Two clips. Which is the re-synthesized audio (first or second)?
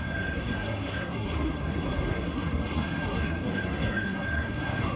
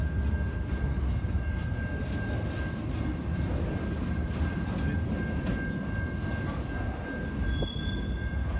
first